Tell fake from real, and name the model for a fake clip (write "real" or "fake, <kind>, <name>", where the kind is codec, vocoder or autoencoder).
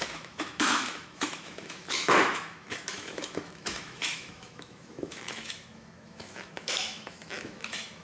fake, autoencoder, DAC-VAE